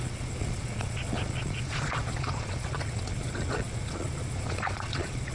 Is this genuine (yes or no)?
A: no